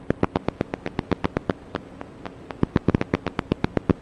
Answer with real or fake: real